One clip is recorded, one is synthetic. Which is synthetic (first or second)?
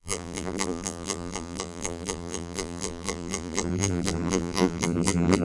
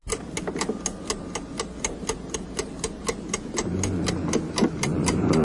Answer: first